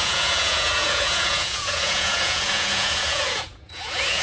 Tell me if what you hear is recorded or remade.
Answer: remade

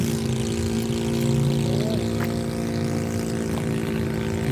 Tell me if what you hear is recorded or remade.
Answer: recorded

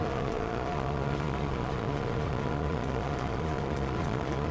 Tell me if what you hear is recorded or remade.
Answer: remade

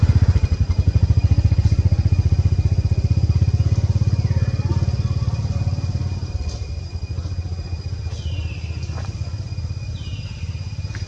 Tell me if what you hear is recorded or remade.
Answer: recorded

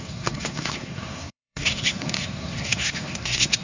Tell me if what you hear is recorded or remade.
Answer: remade